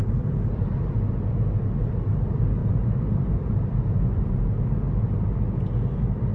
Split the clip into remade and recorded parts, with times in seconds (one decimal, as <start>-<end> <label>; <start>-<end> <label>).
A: 0.0-2.6 recorded; 2.6-4.3 remade; 4.3-6.3 recorded